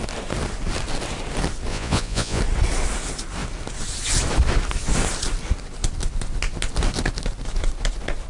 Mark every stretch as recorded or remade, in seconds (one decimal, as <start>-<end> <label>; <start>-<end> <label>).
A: 0.0-1.7 recorded; 1.7-2.4 remade; 2.4-8.3 recorded